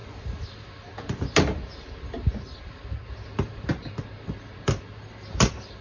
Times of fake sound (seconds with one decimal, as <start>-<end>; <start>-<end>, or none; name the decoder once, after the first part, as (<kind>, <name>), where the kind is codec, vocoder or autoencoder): none